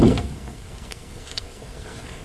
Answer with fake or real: fake